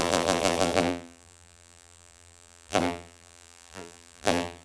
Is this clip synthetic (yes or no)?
yes